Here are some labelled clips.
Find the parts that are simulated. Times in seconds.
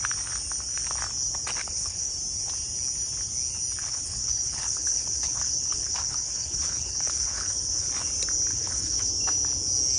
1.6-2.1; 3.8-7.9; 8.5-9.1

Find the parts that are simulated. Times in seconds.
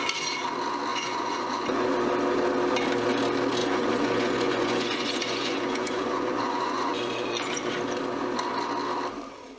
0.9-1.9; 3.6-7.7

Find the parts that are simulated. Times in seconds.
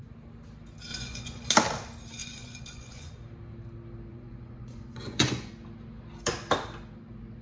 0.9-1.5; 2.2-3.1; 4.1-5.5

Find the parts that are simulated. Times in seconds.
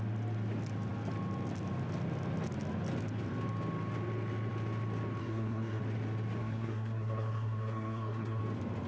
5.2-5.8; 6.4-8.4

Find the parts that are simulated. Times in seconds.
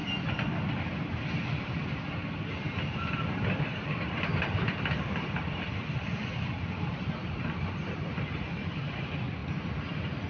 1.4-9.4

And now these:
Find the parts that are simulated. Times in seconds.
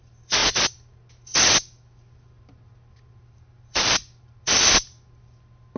none